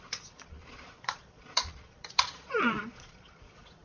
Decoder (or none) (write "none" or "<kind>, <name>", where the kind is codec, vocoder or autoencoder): vocoder, Vocos